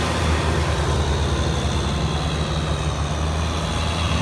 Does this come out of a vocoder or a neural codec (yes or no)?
no